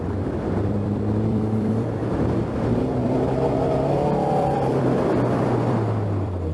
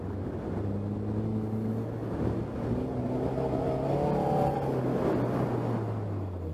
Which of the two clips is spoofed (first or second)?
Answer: first